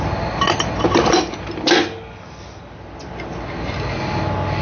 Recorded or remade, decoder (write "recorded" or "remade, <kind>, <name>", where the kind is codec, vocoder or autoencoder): recorded